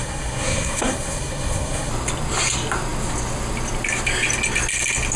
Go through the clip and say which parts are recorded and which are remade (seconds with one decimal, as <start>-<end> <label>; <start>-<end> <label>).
0.0-1.9 remade; 1.9-5.2 recorded